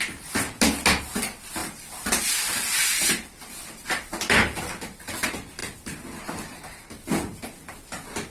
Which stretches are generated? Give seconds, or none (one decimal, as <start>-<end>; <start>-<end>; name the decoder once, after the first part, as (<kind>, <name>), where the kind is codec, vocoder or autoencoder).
none